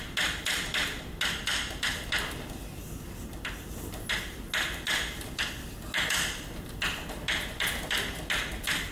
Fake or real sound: real